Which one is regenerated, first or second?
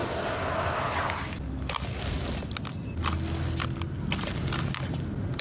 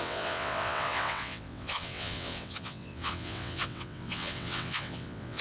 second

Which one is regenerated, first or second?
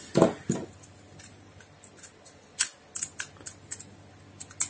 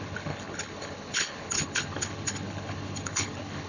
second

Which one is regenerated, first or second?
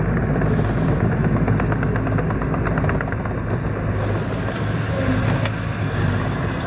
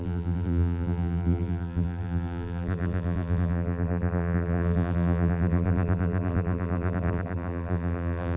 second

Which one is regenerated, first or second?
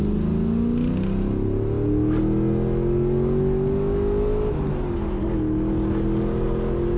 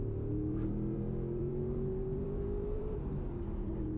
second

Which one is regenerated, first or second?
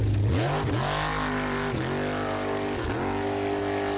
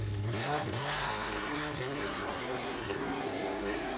second